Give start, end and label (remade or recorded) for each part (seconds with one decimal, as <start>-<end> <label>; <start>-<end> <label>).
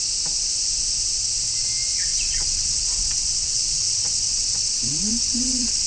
0.0-2.1 recorded; 2.1-5.9 remade